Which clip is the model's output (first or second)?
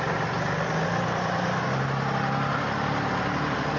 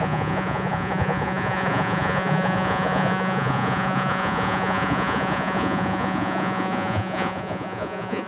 second